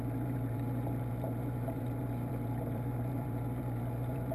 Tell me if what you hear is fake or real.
fake